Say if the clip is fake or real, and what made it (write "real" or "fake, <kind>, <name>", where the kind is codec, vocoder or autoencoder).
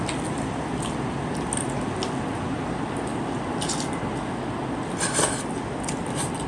real